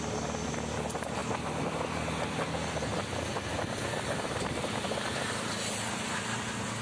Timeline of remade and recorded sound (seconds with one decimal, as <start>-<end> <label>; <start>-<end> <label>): 0.0-6.8 recorded